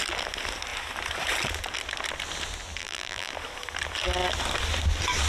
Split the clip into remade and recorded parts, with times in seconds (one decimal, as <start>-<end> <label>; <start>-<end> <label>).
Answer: 0.0-2.8 recorded; 2.8-3.3 remade; 3.3-5.3 recorded